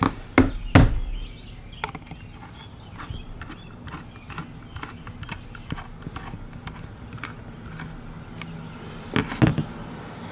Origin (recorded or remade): recorded